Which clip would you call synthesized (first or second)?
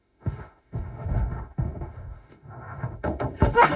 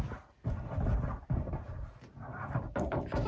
first